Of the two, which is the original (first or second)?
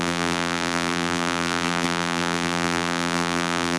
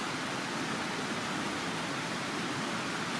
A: second